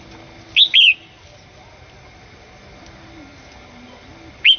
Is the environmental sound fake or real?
real